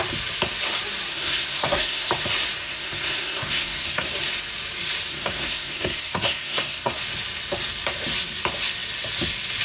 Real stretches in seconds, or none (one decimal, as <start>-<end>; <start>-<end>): 0.0-1.1; 2.1-2.6; 4.1-5.1; 7.0-9.6